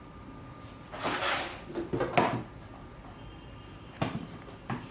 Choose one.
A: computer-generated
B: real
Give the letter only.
B